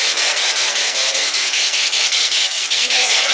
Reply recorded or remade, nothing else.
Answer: remade